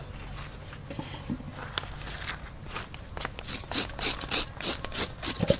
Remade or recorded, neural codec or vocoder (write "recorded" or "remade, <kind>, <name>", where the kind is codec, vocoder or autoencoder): recorded